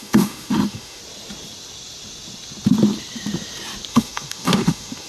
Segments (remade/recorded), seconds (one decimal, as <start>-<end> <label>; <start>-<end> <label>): 0.0-1.0 remade; 1.0-3.9 recorded; 3.9-5.1 remade